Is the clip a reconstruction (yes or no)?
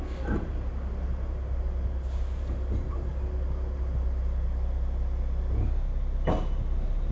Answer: no